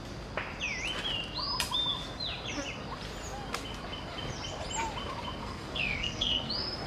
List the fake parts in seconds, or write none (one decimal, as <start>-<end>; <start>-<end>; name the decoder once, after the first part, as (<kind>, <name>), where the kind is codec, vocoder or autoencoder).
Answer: 5.4-6.5 (codec, SNAC)

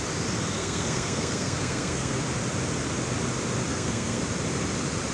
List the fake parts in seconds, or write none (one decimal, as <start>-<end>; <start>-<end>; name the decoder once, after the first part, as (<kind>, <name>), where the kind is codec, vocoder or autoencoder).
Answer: 0.6-2.2 (codec, SNAC); 3.7-4.2

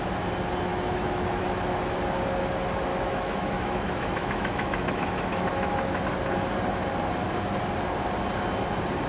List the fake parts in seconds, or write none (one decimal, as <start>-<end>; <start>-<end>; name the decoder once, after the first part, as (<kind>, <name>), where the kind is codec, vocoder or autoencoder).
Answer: 0.7-1.4 (autoencoder, DAC-VAE); 2.9-6.0

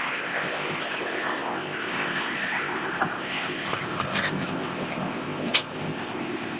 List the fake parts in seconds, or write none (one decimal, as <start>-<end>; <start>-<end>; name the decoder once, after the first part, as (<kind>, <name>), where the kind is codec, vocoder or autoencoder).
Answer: 0.0-6.6 (codec, ZipCodec)

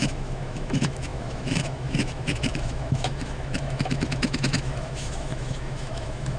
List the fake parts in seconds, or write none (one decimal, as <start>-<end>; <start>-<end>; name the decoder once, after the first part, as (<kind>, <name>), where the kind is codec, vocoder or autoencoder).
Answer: 0.0-6.4 (autoencoder, DAC-VAE)

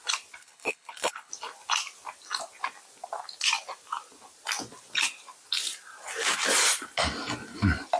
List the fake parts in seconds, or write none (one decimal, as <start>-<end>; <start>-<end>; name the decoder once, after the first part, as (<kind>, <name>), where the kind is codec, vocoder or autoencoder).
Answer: 0.4-1.3 (codec, HILCodec)

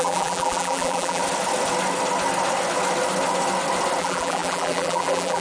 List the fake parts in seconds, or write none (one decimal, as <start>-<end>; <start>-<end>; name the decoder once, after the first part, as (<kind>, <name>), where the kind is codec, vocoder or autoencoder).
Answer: 0.0-1.2 (vocoder, BigVGAN v2); 4.0-5.4

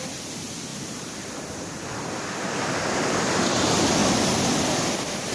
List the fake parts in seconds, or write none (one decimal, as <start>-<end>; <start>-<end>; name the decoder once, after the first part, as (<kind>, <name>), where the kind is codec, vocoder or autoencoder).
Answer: none